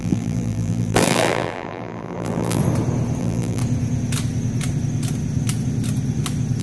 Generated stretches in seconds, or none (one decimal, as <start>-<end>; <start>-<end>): 0.0-2.6; 3.2-3.6

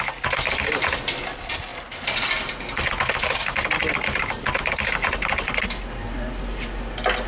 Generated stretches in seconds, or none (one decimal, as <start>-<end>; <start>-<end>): none